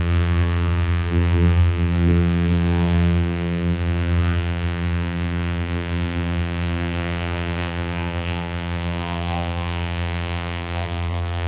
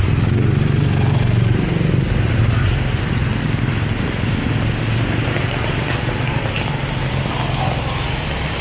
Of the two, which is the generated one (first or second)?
first